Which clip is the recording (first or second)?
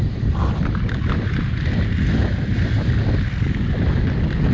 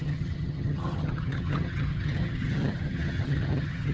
first